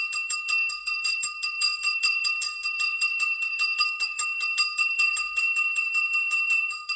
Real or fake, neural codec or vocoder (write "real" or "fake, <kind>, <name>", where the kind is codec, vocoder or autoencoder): fake, codec, SNAC